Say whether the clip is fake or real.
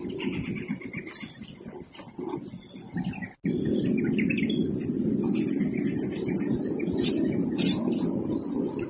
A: real